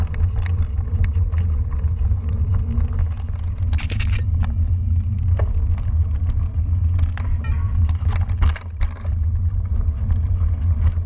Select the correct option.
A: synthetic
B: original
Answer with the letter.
B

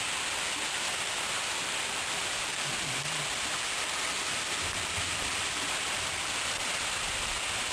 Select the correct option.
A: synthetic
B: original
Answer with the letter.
B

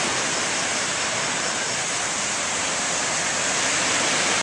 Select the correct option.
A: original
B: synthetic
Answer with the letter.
A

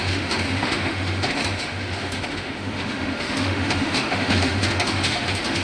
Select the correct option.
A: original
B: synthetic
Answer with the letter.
B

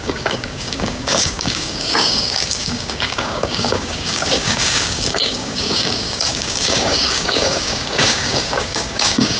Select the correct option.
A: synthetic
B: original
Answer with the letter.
A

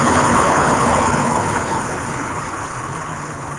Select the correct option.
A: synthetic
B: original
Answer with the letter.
A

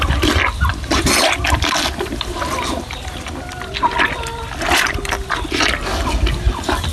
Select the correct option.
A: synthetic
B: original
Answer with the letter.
B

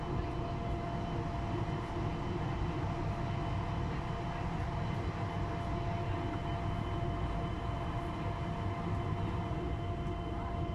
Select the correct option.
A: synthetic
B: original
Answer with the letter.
B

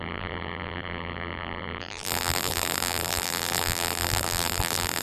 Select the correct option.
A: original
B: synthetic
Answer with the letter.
B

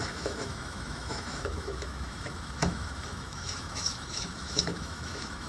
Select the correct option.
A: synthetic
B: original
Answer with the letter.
A